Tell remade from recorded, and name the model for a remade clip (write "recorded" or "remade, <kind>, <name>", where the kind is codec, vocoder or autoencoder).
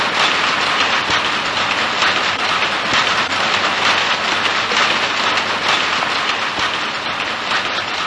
recorded